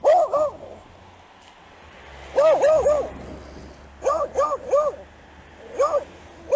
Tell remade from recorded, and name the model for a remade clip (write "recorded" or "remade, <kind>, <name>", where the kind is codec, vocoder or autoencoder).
recorded